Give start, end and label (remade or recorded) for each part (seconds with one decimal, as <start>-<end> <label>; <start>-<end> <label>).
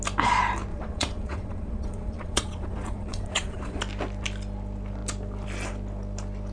0.0-0.7 recorded; 0.7-3.8 remade; 3.8-6.5 recorded